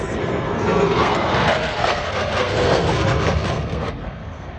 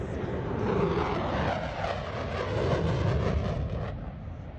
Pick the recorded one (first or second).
second